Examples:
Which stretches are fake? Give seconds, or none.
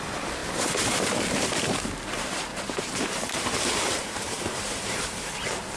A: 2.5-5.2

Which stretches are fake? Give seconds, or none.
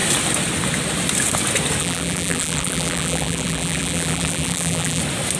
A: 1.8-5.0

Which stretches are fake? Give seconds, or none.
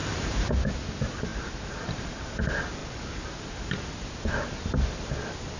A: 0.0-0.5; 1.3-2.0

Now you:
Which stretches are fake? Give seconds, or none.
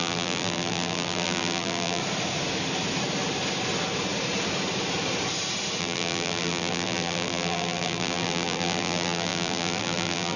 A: 0.0-2.0; 5.8-10.4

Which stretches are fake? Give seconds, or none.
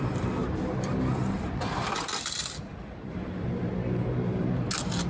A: 0.4-3.5